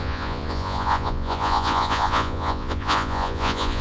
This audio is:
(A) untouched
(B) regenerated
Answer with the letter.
B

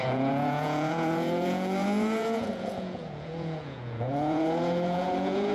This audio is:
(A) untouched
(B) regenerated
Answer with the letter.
B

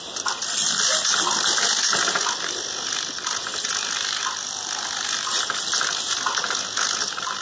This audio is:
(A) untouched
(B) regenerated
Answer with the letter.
A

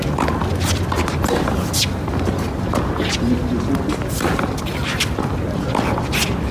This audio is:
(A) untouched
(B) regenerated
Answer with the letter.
A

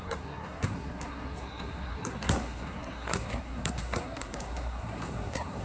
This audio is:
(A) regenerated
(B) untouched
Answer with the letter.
A